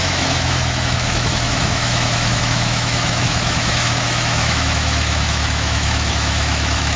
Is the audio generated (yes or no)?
yes